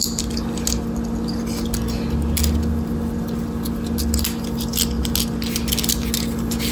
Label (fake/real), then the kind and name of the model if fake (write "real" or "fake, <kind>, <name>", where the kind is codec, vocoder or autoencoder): real